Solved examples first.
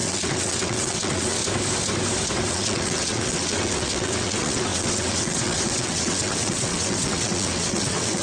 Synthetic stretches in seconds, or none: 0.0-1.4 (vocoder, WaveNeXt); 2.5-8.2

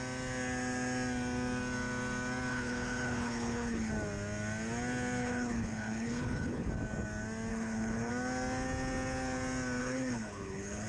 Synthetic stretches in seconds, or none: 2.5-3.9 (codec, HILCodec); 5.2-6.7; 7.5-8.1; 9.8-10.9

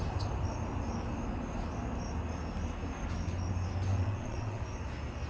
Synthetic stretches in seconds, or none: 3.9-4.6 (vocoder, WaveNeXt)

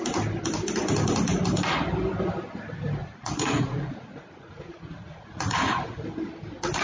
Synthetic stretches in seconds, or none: 3.0-6.0 (vocoder, Vocos)

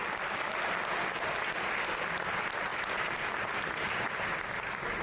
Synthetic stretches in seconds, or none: none

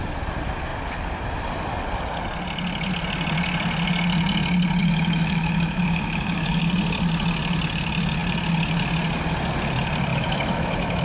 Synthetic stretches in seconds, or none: 4.8-6.6 (autoencoder, DAC-VAE); 10.1-11.0

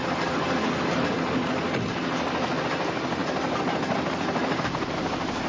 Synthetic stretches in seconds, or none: none

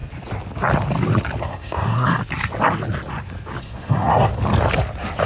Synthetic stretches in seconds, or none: 1.4-2.2 (codec, SNAC); 3.6-4.3